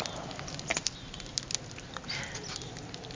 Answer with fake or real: real